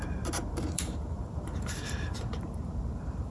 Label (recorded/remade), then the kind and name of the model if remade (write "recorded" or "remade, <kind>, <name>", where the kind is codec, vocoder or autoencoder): remade, vocoder, BigVGAN v2